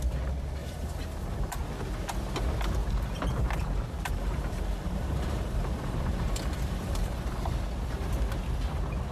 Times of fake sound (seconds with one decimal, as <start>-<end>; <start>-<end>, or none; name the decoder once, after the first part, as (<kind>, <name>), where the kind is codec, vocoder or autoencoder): 0.6-1.6 (vocoder, BigVGAN v2); 2.8-7.5